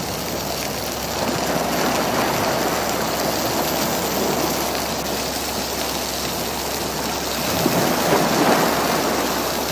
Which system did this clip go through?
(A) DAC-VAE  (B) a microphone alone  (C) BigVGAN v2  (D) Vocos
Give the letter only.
B